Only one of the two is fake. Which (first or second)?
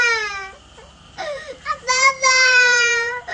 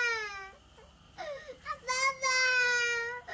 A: first